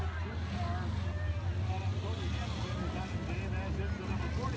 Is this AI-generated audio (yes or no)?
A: no